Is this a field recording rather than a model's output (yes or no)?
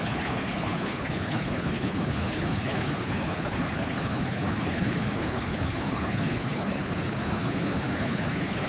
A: no